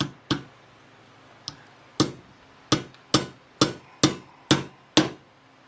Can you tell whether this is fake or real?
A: real